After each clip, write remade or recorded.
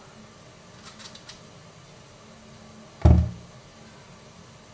recorded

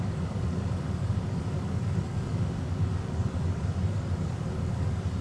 remade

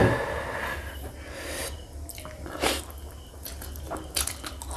recorded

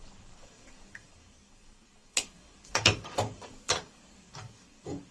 remade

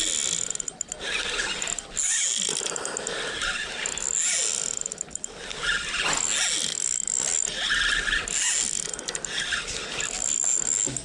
recorded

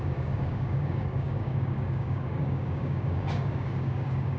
remade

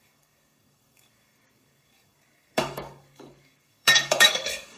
remade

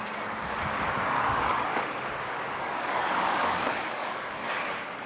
remade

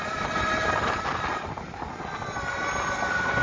recorded